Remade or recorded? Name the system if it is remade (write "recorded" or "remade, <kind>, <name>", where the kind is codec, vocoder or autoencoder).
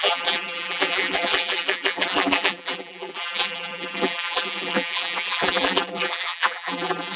remade, vocoder, BigVGAN v2